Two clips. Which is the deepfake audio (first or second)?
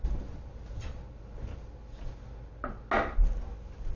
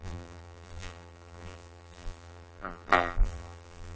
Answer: second